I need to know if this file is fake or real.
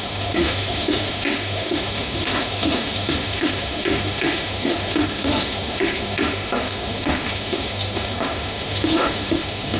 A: fake